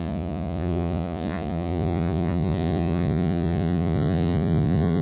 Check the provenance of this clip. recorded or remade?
remade